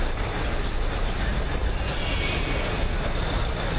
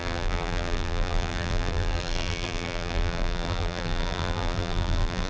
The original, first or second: first